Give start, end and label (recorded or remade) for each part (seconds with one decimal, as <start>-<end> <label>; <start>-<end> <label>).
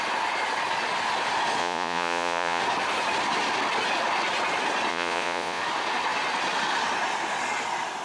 0.0-1.6 recorded; 1.6-2.6 remade; 2.6-4.9 recorded; 4.9-5.6 remade; 5.6-8.0 recorded